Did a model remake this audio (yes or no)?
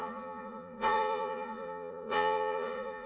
yes